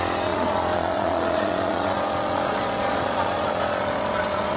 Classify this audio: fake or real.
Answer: fake